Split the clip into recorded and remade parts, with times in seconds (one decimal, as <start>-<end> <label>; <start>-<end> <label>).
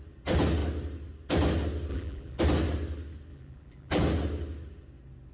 0.0-1.9 recorded; 1.9-2.4 remade; 2.4-3.3 recorded; 3.3-4.0 remade; 4.0-5.3 recorded